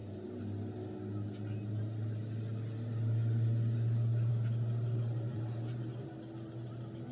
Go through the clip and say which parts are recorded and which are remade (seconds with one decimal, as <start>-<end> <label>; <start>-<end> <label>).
0.0-5.3 recorded; 5.3-6.2 remade; 6.2-7.1 recorded